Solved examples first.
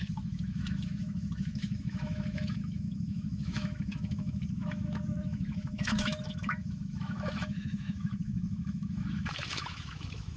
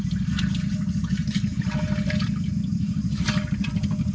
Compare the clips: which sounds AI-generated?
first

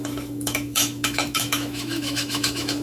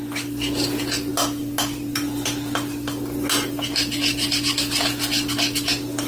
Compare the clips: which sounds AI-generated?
first